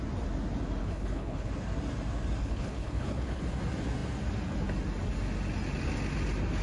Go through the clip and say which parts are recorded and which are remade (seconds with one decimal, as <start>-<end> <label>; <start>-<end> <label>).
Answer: 0.0-0.8 recorded; 0.8-1.5 remade; 1.5-2.4 recorded; 2.4-3.4 remade; 3.4-6.6 recorded